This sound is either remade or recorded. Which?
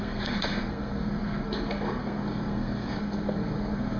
remade